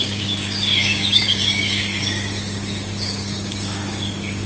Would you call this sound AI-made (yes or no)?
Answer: yes